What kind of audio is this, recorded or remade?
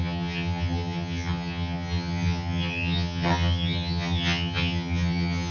remade